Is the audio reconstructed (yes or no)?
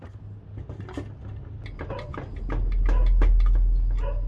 no